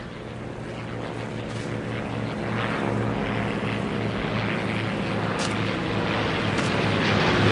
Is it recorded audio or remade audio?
recorded